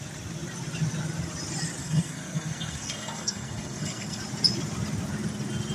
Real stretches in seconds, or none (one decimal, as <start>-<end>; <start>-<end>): 0.0-1.8; 4.2-5.7